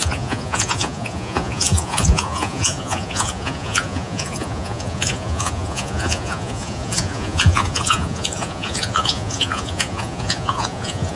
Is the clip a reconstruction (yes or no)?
yes